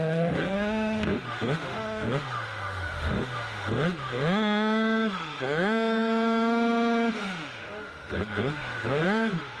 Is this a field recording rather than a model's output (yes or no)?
no